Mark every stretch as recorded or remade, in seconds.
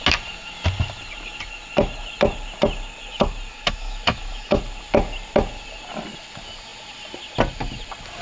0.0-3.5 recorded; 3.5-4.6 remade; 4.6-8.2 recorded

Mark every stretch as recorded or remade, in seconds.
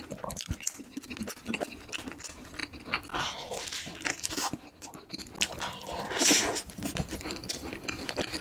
0.0-8.4 recorded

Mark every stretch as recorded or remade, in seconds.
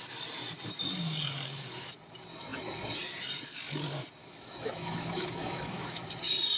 0.0-4.2 recorded; 4.2-6.0 remade; 6.0-6.6 recorded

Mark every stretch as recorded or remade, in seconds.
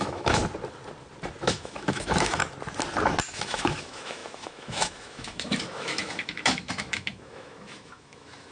0.0-0.4 remade; 0.4-1.4 recorded; 1.4-2.4 remade; 2.4-3.3 recorded; 3.3-8.5 remade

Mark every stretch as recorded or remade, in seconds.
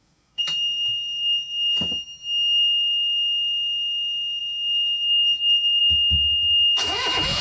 0.0-1.9 remade; 1.9-2.6 recorded; 2.6-7.4 remade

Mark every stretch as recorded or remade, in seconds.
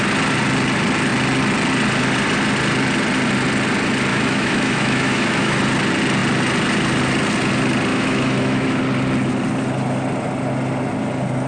0.0-4.1 recorded; 4.1-5.6 remade; 5.6-7.9 recorded; 7.9-8.8 remade; 8.8-11.5 recorded